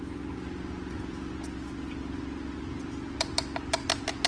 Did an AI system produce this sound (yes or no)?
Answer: no